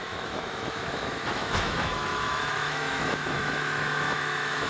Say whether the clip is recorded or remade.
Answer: remade